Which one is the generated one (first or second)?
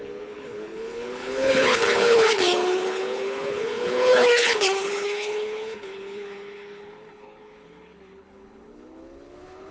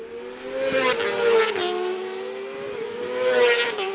first